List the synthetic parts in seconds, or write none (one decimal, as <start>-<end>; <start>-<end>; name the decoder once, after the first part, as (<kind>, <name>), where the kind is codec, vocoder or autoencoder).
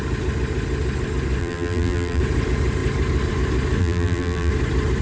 1.4-2.2 (vocoder, BigVGAN v2); 3.8-4.5